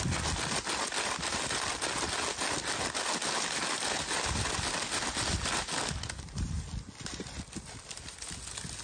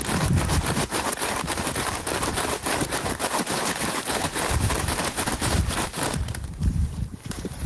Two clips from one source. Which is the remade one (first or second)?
second